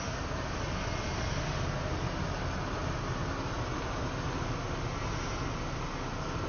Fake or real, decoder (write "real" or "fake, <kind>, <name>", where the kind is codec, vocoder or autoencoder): real